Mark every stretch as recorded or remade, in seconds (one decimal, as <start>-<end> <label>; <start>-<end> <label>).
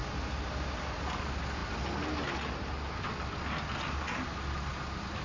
0.0-5.2 recorded